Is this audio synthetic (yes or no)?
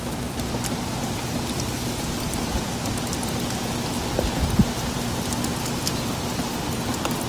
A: no